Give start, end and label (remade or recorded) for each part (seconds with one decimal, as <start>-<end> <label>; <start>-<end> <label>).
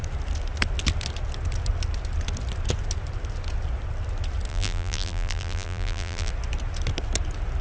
0.0-4.5 recorded; 4.5-6.3 remade; 6.3-7.6 recorded